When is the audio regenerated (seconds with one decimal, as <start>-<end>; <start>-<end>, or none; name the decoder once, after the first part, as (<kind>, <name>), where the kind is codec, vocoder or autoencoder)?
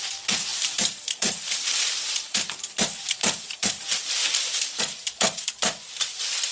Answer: 0.5-3.6 (vocoder, BigVGAN v2); 4.2-4.8